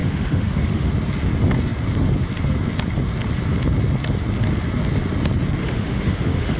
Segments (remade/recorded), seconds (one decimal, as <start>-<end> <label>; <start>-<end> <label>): 0.0-0.9 remade; 0.9-5.6 recorded; 5.6-6.6 remade